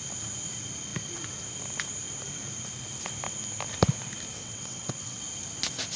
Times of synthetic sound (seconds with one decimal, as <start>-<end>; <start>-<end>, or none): 4.4-5.2